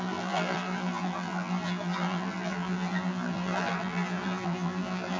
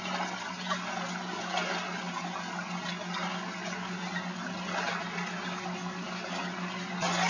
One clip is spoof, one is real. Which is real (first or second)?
second